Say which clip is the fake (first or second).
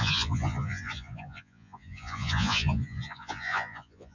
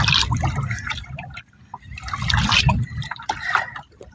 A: first